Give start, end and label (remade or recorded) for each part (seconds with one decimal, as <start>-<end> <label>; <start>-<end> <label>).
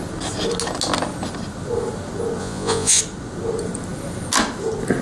0.0-2.4 recorded; 2.4-3.0 remade; 3.0-5.0 recorded